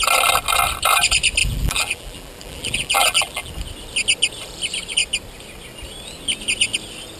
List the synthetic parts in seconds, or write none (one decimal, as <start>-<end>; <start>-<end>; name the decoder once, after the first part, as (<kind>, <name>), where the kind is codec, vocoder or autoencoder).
1.4-3.5 (vocoder, BigVGAN v2)